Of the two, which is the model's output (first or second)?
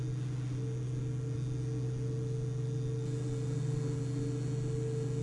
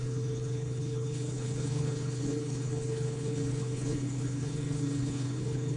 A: second